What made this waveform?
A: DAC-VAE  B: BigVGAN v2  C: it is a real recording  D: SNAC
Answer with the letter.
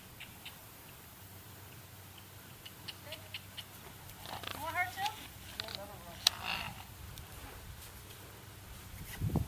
C